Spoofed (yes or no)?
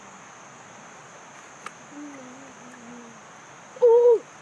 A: no